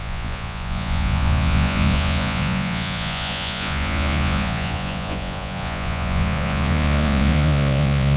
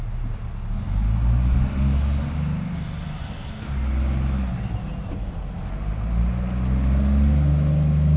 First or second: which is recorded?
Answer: second